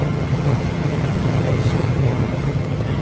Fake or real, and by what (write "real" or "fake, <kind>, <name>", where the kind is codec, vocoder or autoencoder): fake, vocoder, HiFi-GAN